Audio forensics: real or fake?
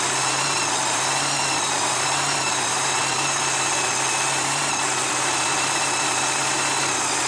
fake